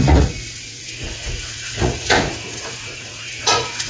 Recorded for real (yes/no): no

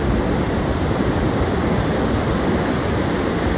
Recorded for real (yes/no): yes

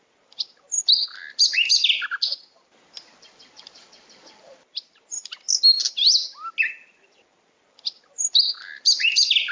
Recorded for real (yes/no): yes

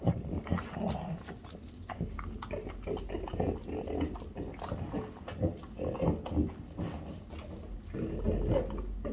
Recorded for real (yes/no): yes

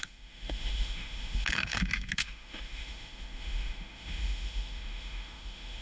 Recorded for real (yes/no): no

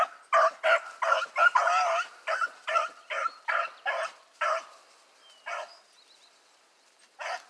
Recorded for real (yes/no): yes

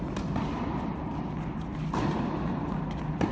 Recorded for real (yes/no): yes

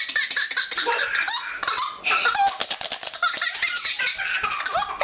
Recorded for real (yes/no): yes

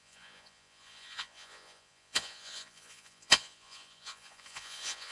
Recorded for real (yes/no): no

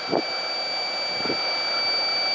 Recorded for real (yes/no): yes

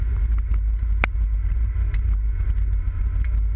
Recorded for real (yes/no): yes